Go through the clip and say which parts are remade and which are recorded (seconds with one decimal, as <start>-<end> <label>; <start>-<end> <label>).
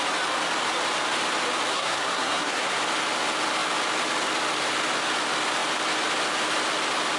0.0-1.7 recorded; 1.7-2.8 remade; 2.8-7.2 recorded